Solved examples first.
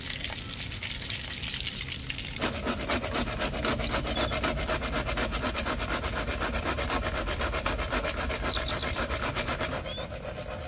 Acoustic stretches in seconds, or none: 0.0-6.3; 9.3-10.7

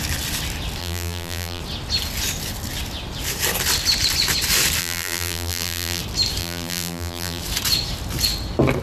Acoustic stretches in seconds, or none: 0.0-0.8; 1.6-4.8; 6.0-6.4; 7.4-8.8

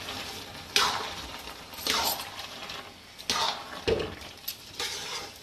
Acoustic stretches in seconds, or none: 0.0-5.4

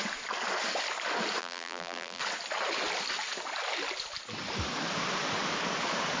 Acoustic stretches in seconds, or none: 0.0-1.4; 2.2-6.2

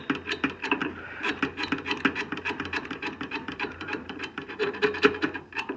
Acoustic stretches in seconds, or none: 0.0-0.8; 1.4-2.3; 4.7-5.8

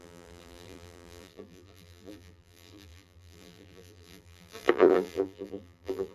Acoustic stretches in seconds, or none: none

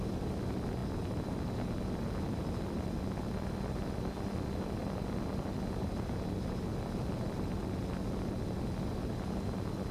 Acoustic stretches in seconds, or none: 0.0-9.9